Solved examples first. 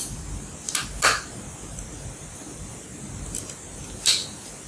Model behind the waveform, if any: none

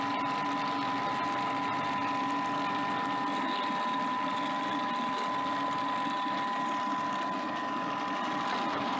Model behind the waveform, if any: none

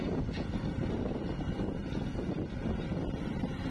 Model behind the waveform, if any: none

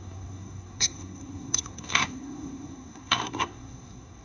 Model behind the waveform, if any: codec, SNAC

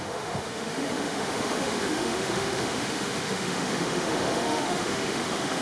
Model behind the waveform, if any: autoencoder, DAC-VAE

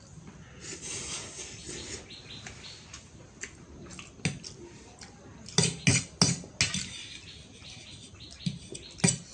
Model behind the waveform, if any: none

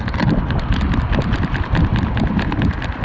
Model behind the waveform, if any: none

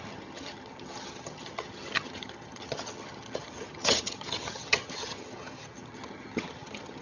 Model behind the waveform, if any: vocoder, HiFi-GAN